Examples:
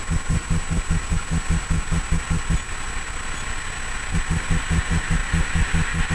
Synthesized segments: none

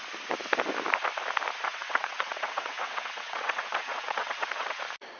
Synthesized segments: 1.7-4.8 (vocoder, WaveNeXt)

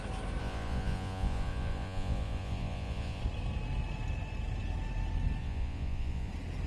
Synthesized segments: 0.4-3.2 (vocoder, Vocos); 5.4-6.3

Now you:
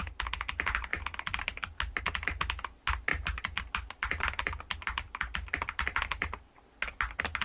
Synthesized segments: 0.9-2.0 (vocoder, BigVGAN v2); 3.1-7.4

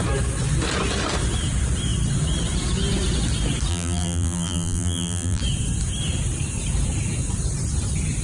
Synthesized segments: 3.7-5.4 (vocoder, BigVGAN v2)

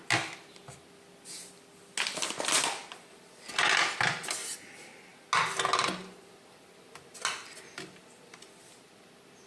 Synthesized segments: none

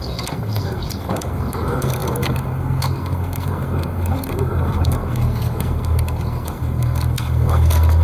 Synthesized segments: 0.0-8.0 (codec, SNAC)